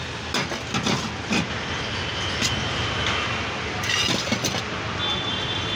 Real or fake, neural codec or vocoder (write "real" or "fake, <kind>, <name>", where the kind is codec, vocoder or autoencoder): real